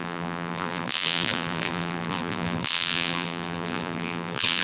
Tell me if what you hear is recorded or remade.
remade